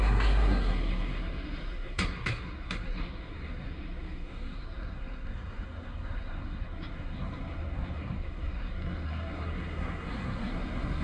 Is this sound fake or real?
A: fake